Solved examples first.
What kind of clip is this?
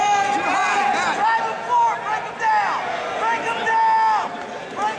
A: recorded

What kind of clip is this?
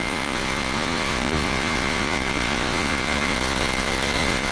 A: remade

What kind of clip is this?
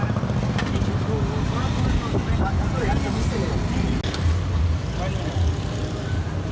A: recorded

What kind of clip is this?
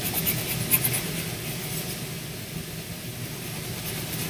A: recorded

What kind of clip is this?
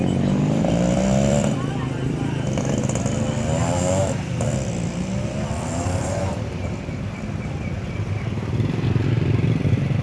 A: remade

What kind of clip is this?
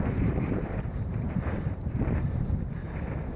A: remade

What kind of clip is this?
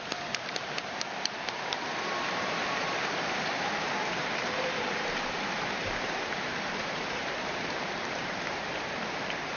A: remade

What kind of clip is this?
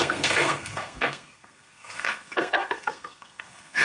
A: remade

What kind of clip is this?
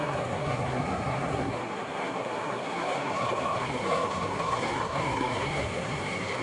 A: remade